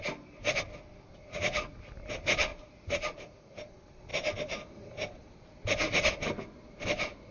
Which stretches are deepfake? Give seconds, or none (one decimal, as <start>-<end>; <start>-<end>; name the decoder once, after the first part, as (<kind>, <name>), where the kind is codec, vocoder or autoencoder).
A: 1.3-1.9 (vocoder, Vocos); 2.5-3.6